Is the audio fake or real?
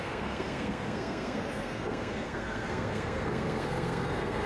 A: fake